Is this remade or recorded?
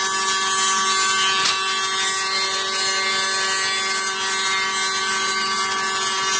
recorded